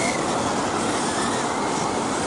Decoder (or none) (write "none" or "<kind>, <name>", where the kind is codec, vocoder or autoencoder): none